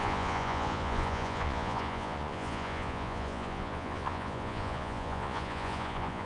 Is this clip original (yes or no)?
no